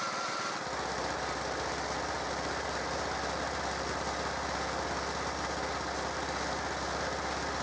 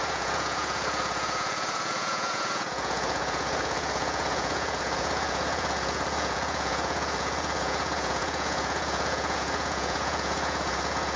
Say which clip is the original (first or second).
first